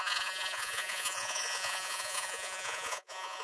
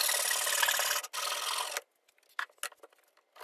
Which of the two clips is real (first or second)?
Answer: second